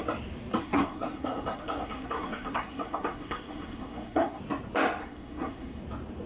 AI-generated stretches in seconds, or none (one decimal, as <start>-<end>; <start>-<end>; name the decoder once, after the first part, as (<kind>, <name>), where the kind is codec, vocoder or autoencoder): 0.6-4.4 (codec, SNAC); 5.0-5.8